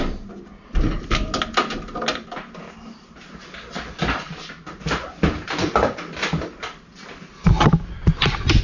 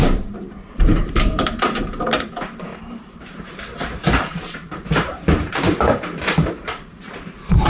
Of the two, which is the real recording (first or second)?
first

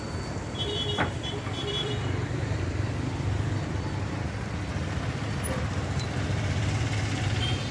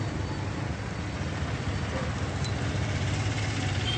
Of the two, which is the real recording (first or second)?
second